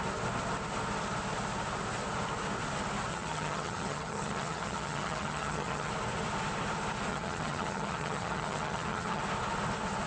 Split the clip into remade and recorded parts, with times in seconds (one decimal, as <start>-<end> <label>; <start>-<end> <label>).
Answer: 0.0-3.1 recorded; 3.1-5.9 remade; 5.9-7.1 recorded; 7.1-9.2 remade; 9.2-10.1 recorded